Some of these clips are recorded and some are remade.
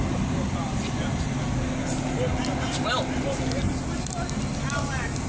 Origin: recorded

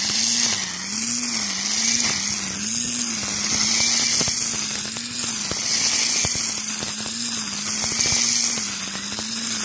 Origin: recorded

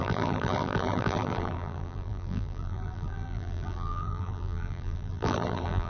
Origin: remade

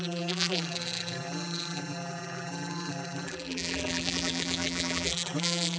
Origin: remade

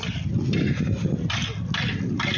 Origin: recorded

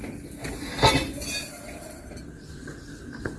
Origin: recorded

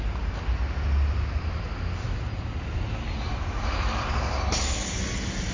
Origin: recorded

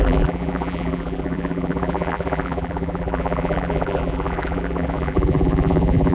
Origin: remade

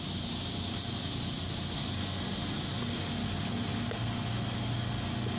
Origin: recorded